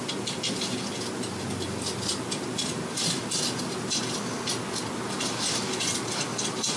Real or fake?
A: real